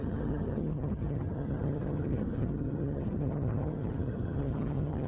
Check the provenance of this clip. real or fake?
fake